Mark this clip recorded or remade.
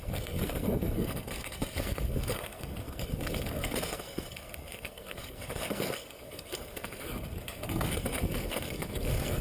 remade